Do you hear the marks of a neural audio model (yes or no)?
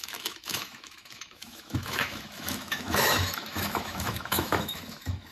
yes